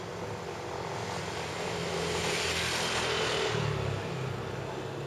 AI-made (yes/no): no